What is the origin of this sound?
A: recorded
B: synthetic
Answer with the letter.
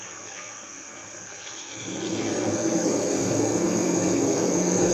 B